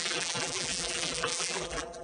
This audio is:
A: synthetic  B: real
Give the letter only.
A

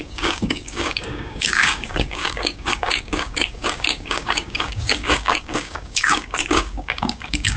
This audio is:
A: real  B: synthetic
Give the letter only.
B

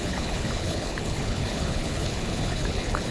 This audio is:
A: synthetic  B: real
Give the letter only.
A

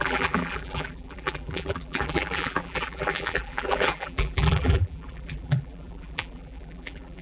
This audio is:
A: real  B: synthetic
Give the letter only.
B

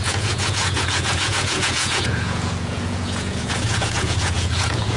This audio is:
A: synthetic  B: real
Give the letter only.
A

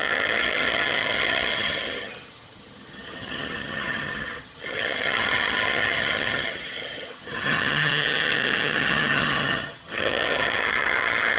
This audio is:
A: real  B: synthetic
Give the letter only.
B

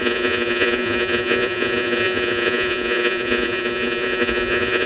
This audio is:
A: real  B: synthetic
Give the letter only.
B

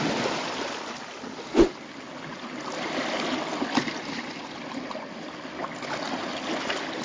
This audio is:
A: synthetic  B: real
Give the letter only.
B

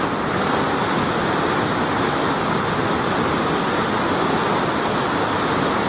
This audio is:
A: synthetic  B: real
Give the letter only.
B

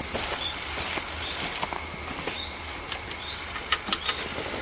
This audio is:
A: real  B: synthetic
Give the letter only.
A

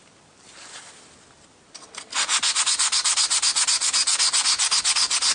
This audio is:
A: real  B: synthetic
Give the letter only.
A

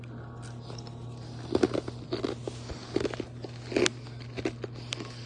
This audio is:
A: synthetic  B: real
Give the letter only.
B